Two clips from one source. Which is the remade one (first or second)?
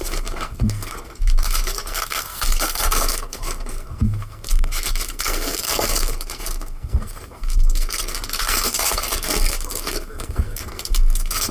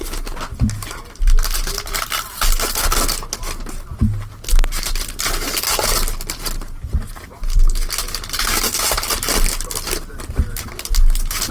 first